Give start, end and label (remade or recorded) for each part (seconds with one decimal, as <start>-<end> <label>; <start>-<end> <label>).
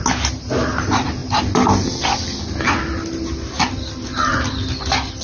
0.0-5.2 recorded